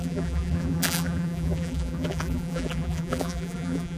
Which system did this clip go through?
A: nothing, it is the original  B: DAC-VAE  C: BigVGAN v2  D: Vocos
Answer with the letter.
C